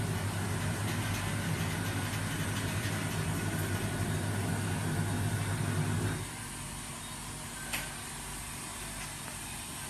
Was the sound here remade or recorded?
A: recorded